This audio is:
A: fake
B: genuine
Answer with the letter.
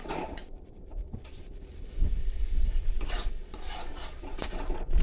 A